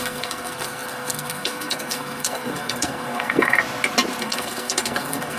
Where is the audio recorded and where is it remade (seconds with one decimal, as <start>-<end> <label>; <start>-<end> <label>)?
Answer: 0.0-3.6 remade; 3.6-4.2 recorded; 4.2-5.4 remade